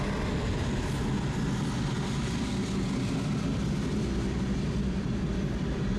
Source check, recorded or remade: recorded